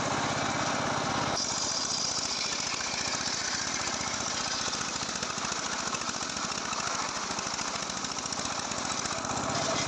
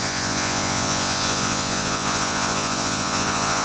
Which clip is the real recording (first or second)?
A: first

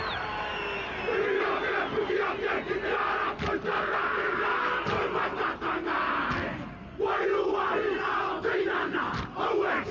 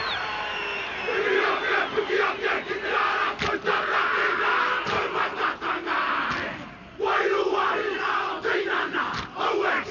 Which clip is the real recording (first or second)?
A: first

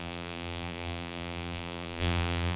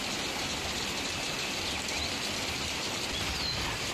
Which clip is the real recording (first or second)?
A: second